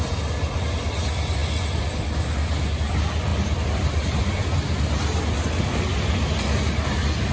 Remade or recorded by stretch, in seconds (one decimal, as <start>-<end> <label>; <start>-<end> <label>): 0.0-7.3 recorded